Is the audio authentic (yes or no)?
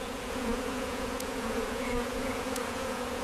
no